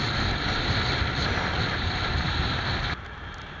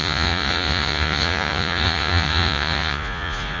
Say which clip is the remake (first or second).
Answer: second